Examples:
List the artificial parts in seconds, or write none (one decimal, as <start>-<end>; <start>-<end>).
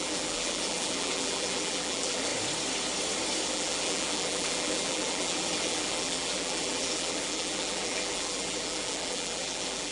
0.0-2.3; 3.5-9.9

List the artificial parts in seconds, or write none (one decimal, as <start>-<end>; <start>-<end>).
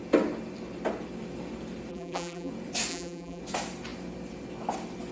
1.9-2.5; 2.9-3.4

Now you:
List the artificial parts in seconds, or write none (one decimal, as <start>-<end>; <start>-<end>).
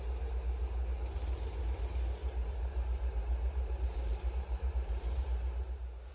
2.2-6.1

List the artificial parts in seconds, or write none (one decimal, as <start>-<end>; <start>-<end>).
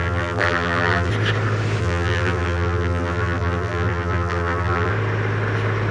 0.0-1.1; 1.8-4.9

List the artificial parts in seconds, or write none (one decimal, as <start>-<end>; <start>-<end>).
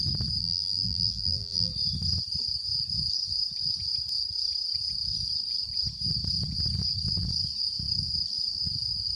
0.4-1.7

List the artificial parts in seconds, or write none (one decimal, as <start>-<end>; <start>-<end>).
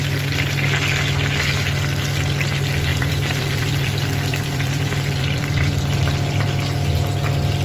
2.9-6.0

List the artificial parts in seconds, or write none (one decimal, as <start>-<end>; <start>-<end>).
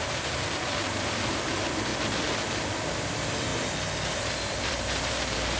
0.0-1.9; 2.7-3.5; 4.1-5.6